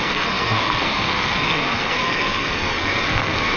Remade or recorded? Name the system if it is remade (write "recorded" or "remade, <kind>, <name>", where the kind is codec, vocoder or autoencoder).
remade, codec, SNAC